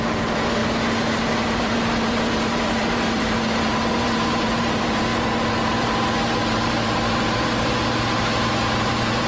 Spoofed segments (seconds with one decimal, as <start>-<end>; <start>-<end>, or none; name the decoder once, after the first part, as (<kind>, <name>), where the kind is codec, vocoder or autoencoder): 0.0-9.3 (vocoder, BigVGAN v2)